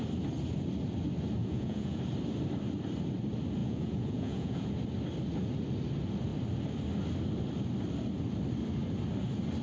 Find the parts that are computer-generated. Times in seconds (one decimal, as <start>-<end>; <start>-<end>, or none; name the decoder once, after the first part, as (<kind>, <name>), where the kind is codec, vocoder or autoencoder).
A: 1.4-2.0 (vocoder, Vocos); 3.6-4.7